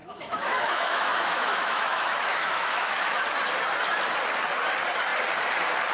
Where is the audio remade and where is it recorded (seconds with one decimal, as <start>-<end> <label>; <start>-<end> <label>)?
0.0-3.1 remade; 3.1-5.9 recorded